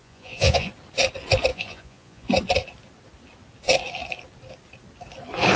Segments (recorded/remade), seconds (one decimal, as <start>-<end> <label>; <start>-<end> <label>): 0.0-0.7 remade; 0.7-1.5 recorded; 1.5-2.3 remade; 2.3-5.6 recorded